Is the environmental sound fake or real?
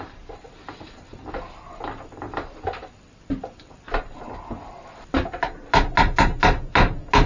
real